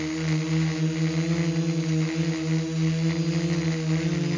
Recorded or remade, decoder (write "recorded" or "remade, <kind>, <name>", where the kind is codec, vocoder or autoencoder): recorded